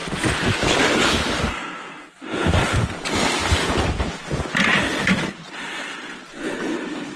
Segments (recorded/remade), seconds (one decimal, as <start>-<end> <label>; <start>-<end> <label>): 0.0-7.2 recorded